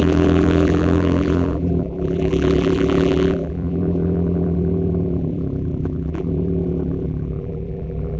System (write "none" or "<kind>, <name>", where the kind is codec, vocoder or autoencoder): vocoder, BigVGAN v2